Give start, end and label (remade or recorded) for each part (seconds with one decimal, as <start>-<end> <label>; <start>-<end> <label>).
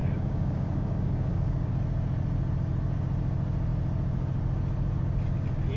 0.0-1.7 remade; 1.7-5.8 recorded